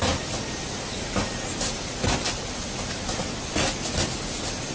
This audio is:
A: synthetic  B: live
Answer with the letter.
B